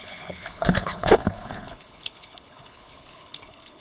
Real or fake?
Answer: fake